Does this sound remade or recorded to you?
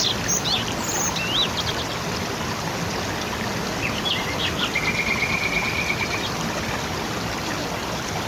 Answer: recorded